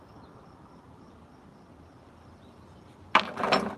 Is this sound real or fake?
real